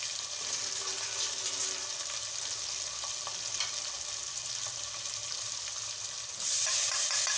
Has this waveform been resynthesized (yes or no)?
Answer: no